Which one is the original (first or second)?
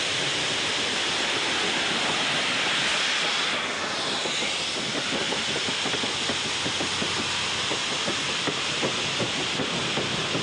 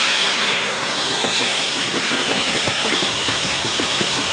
first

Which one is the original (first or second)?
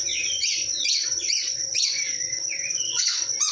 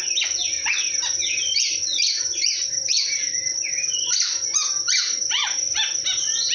second